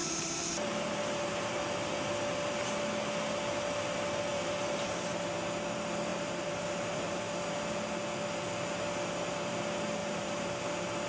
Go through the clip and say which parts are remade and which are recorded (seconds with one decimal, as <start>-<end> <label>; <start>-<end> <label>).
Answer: 0.0-1.5 remade; 1.5-4.3 recorded; 4.3-5.1 remade; 5.1-6.1 recorded; 6.1-7.2 remade; 7.2-10.0 recorded; 10.0-10.7 remade; 10.7-11.1 recorded